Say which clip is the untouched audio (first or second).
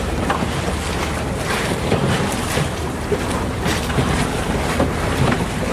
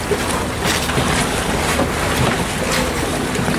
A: second